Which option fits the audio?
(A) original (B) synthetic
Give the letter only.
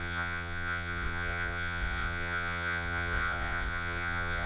B